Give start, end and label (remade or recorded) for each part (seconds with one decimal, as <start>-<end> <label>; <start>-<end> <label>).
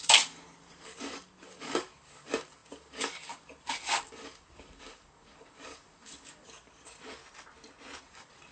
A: 0.0-7.2 remade; 7.2-8.0 recorded; 8.0-8.5 remade